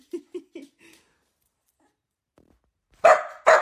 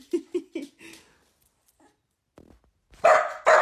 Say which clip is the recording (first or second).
second